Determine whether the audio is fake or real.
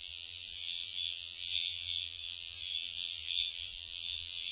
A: fake